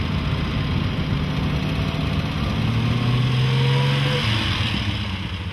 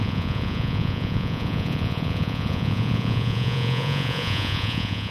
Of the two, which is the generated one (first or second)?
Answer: second